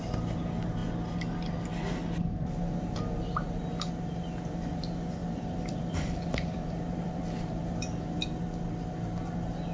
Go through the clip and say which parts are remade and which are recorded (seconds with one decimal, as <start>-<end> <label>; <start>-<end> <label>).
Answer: 0.0-5.2 recorded; 5.2-7.6 remade; 7.6-9.7 recorded